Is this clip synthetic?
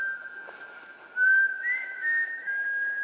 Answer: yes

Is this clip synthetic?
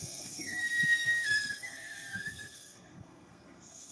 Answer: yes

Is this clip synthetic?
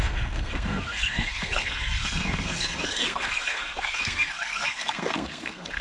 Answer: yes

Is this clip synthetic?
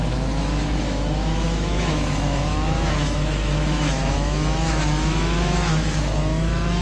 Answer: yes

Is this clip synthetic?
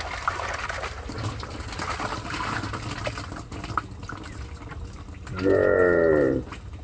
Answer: no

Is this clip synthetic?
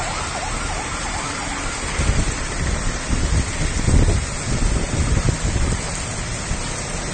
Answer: no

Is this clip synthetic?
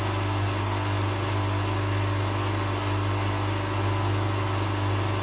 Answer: no